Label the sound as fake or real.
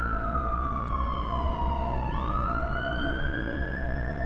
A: fake